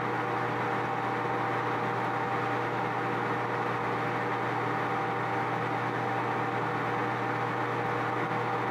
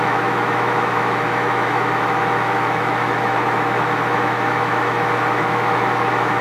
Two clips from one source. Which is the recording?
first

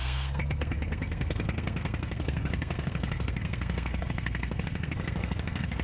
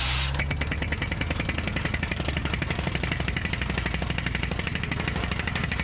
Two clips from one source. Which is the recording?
second